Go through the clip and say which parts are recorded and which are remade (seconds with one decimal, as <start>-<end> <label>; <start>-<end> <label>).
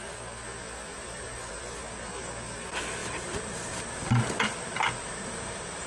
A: 0.0-0.9 recorded; 0.9-1.5 remade; 1.5-3.0 recorded; 3.0-3.8 remade; 3.8-5.0 recorded; 5.0-5.9 remade